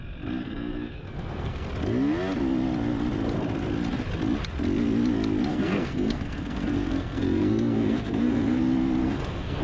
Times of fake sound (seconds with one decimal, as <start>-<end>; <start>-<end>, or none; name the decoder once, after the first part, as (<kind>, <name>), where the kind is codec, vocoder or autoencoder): 0.4-1.7 (codec, SNAC); 5.5-8.6; 9.0-9.6